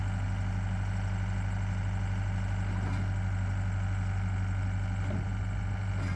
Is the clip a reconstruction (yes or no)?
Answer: no